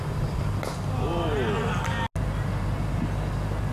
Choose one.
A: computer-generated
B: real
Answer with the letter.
B